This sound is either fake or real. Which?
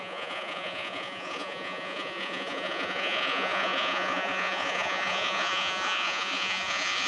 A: fake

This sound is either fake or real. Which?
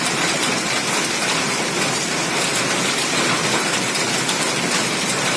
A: real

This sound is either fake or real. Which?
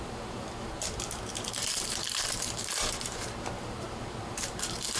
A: fake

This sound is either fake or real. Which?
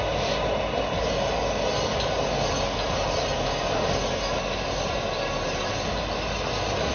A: real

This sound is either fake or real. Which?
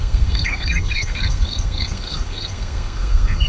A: fake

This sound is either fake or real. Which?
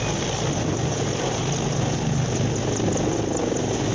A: real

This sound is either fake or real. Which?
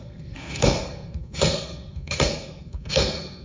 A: fake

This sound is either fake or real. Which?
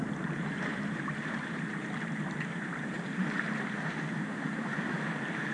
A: fake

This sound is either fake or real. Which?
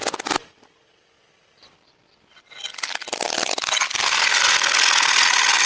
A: real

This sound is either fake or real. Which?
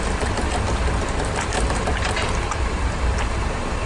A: fake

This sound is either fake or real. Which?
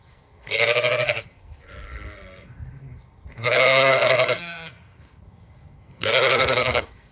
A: fake